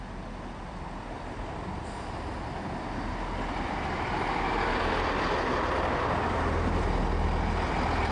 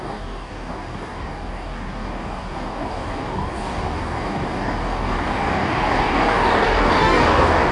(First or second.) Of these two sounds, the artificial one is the second